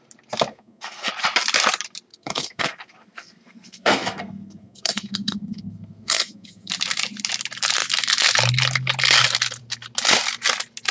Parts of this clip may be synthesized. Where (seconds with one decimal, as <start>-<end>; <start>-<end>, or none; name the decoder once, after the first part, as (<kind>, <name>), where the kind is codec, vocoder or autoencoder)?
0.5-1.1 (codec, SNAC); 2.1-6.7